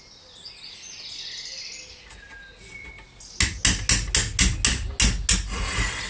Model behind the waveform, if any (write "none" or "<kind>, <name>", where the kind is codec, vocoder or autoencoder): none